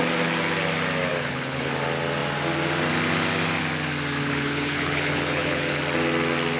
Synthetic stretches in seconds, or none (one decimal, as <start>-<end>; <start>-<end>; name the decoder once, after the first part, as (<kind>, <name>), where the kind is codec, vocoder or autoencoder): 1.1-1.7 (codec, HILCodec); 4.2-5.8